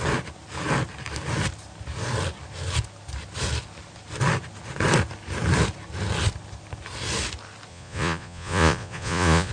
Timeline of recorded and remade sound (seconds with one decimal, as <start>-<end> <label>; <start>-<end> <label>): 0.0-7.7 recorded; 7.7-9.5 remade